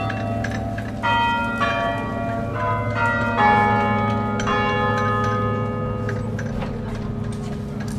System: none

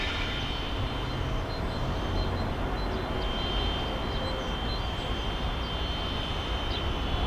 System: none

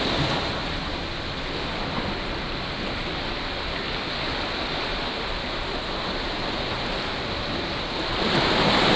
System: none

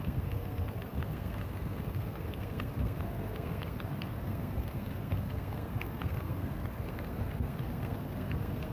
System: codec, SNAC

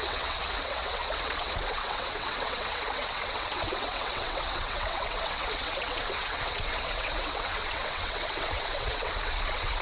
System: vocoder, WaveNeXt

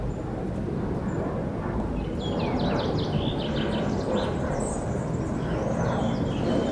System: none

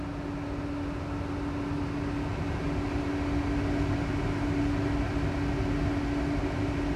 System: none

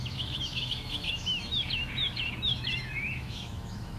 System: autoencoder, DAC-VAE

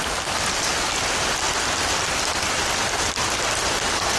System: none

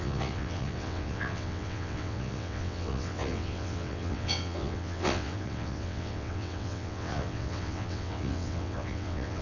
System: vocoder, WaveNeXt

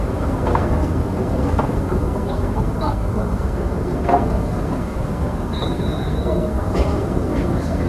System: codec, SNAC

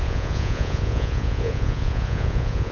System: vocoder, Vocos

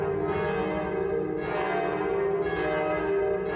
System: none